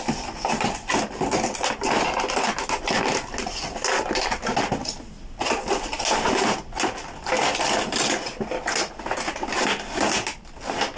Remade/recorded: recorded